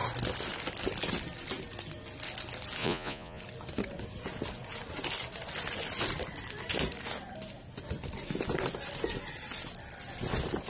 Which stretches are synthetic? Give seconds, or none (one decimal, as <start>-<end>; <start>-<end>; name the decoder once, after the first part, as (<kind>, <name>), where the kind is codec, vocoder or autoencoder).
2.8-3.4 (vocoder, Vocos)